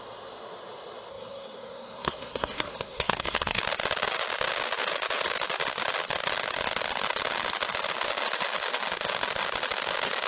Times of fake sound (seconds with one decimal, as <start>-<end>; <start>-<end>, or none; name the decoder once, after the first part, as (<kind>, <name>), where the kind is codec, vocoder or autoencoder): 1.1-3.6 (codec, SNAC)